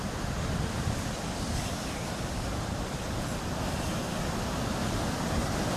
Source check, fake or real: real